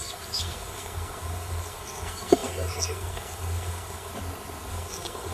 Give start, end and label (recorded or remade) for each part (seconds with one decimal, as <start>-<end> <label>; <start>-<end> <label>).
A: 0.0-4.1 remade; 4.1-4.7 recorded; 4.7-5.3 remade